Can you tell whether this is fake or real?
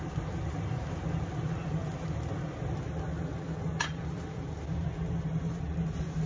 real